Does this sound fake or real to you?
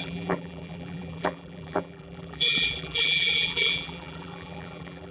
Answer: fake